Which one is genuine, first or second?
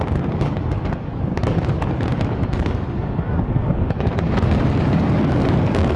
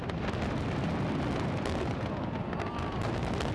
second